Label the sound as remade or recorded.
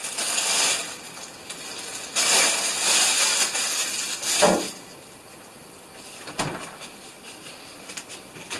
recorded